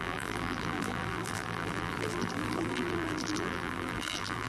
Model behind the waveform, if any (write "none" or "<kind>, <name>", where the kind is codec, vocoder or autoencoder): vocoder, BigVGAN v2